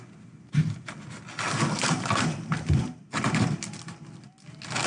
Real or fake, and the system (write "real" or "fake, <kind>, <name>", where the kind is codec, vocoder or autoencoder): real